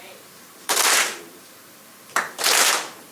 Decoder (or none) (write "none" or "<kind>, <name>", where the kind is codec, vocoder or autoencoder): vocoder, BigVGAN v2